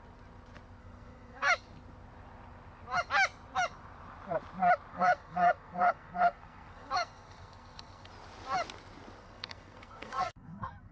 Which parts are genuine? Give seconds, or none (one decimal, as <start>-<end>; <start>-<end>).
0.0-0.8; 1.5-4.9; 8.1-9.2